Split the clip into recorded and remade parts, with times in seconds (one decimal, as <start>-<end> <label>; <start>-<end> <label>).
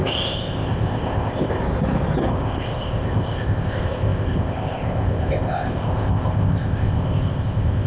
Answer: 0.0-1.6 remade; 1.6-2.3 recorded; 2.3-7.9 remade